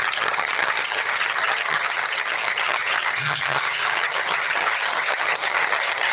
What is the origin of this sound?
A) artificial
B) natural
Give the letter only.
A